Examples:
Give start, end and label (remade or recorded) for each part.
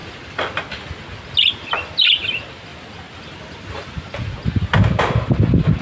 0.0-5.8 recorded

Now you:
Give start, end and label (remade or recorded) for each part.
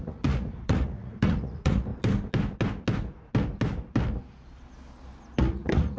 0.0-1.9 remade; 1.9-5.4 recorded; 5.4-6.0 remade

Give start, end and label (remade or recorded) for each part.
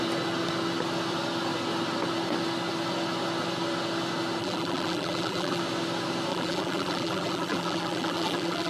0.0-4.4 recorded; 4.4-5.6 remade; 5.6-6.3 recorded; 6.3-8.7 remade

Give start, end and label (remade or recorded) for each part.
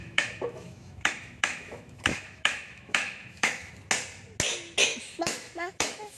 0.0-3.7 remade; 3.7-4.9 recorded; 4.9-6.2 remade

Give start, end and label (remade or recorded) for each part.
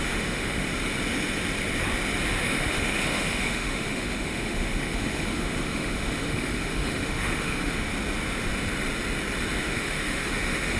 0.0-0.7 remade; 0.7-2.3 recorded; 2.3-7.9 remade; 7.9-9.6 recorded; 9.6-10.8 remade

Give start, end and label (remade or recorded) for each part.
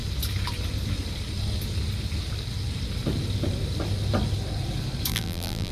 0.0-5.1 recorded; 5.1-5.7 remade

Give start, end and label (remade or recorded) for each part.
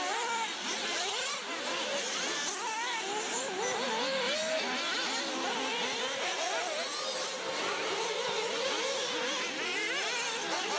0.0-10.8 recorded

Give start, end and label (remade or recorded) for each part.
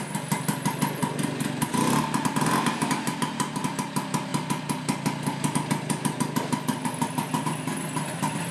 0.0-8.5 recorded